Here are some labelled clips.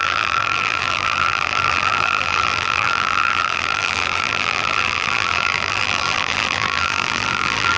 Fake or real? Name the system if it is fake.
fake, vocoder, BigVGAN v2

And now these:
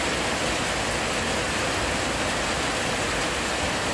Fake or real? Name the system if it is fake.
real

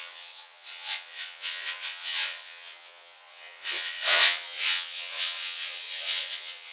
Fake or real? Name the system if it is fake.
fake, vocoder, Vocos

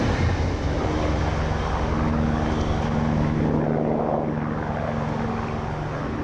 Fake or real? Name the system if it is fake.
real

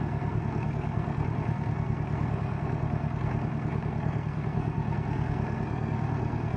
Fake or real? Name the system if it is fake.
fake, codec, SNAC